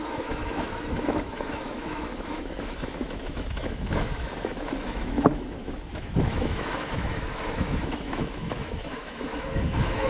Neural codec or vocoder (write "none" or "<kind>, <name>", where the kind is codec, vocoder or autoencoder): autoencoder, DAC-VAE